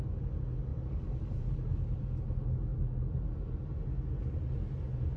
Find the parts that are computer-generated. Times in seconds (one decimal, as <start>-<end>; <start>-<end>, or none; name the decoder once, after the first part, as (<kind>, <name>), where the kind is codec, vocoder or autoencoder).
0.7-2.2 (vocoder, BigVGAN v2)